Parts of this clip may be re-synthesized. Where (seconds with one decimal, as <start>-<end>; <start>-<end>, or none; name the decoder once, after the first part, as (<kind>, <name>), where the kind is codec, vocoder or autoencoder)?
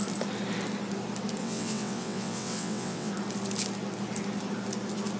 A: 1.4-3.1 (vocoder, WaveNeXt)